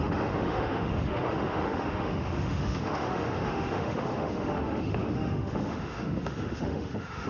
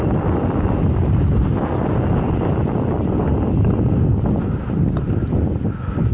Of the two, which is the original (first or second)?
second